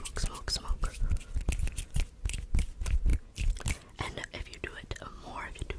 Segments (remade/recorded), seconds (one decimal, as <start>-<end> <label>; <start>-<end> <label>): 0.0-5.8 recorded